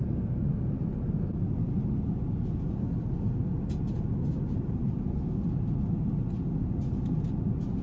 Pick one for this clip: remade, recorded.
recorded